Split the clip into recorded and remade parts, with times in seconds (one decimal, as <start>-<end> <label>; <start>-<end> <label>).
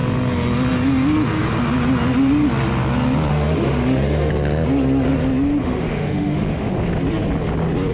0.0-3.3 recorded; 3.3-4.3 remade; 4.3-5.6 recorded; 5.6-6.7 remade; 6.7-7.9 recorded